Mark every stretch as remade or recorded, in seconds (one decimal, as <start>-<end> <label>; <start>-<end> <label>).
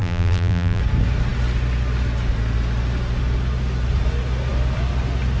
0.0-0.8 remade; 0.8-5.4 recorded